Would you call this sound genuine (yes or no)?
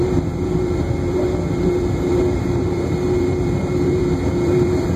no